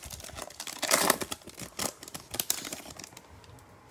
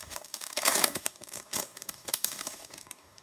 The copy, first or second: second